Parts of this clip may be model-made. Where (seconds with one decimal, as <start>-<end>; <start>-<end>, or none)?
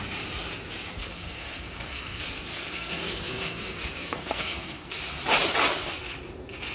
1.0-5.0